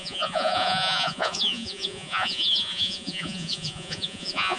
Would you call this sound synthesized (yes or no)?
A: yes